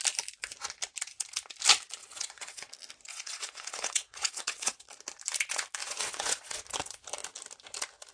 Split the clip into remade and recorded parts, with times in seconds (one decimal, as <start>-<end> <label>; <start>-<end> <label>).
0.0-2.0 recorded; 2.0-2.7 remade; 2.7-3.1 recorded; 3.1-4.9 remade; 4.9-5.8 recorded; 5.8-6.6 remade; 6.6-8.1 recorded